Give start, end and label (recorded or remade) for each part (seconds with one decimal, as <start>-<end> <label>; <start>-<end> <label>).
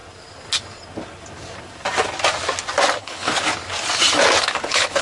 0.0-3.0 recorded; 3.0-3.5 remade; 3.5-4.4 recorded; 4.4-5.0 remade